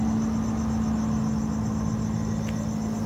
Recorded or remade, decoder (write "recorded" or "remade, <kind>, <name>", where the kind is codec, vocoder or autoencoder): recorded